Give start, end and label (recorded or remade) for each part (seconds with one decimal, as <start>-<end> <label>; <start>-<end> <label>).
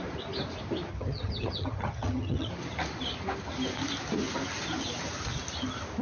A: 0.0-0.9 recorded; 0.9-2.5 remade; 2.5-6.0 recorded